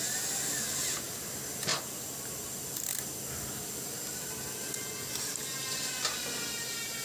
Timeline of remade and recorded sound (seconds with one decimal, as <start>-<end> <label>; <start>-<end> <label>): 0.0-1.7 recorded; 1.7-2.5 remade; 2.5-7.0 recorded